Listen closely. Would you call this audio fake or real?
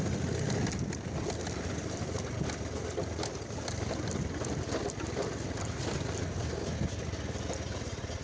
real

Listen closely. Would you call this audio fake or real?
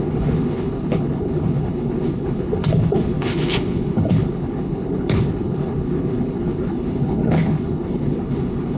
fake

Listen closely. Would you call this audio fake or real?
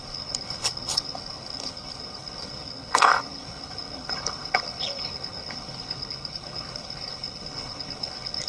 fake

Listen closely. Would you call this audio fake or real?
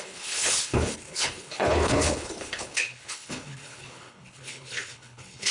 fake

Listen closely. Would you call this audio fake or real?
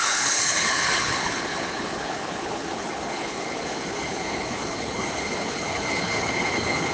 fake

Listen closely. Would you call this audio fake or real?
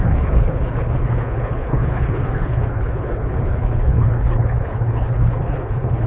fake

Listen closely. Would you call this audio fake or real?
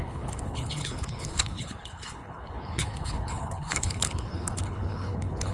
fake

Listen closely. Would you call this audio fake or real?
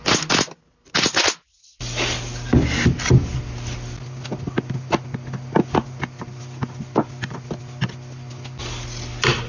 real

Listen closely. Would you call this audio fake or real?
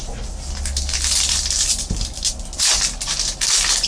real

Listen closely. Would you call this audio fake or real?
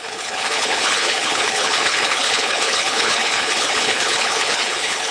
fake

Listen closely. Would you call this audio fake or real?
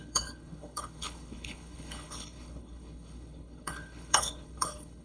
fake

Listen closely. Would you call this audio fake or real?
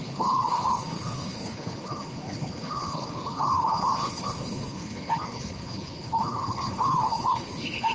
fake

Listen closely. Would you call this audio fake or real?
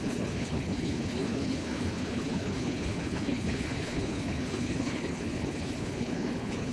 fake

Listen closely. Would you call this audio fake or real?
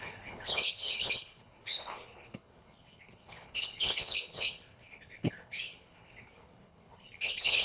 fake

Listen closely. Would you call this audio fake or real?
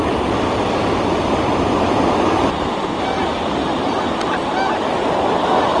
real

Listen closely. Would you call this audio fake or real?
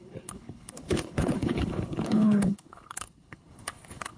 fake